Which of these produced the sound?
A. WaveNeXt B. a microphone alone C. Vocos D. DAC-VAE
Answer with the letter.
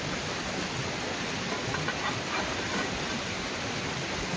B